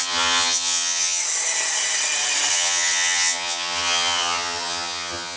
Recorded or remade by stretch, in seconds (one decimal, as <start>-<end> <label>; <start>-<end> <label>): 0.0-1.2 remade; 1.2-2.5 recorded; 2.5-5.4 remade